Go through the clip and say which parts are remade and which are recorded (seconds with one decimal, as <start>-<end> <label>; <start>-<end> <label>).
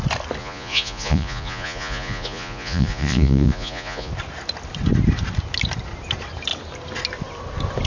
0.0-0.4 recorded; 0.4-4.1 remade; 4.1-7.9 recorded